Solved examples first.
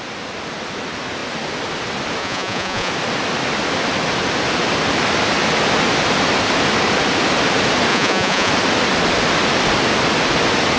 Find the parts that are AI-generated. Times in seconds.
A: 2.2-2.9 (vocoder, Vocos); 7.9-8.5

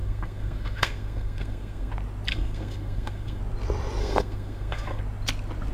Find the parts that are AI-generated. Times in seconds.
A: 0.0-1.9 (codec, SNAC); 2.3-3.4; 4.0-5.0

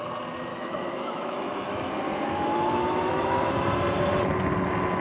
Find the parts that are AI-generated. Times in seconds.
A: 0.5-3.5 (autoencoder, DAC-VAE)

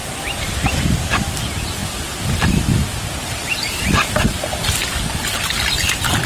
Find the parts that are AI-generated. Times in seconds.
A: 0.0-0.8 (vocoder, BigVGAN v2)

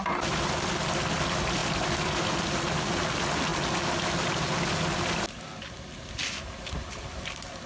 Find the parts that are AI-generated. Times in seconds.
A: none

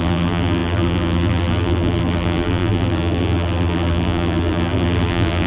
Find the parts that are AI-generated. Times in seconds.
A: 0.0-5.5 (vocoder, BigVGAN v2)

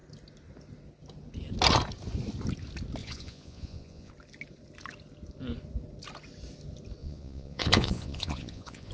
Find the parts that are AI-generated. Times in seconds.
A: 3.0-4.1 (vocoder, Vocos); 7.0-8.9

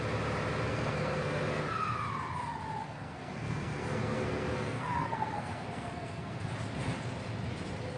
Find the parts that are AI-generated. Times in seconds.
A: 0.7-1.6 (codec, SNAC); 2.8-6.5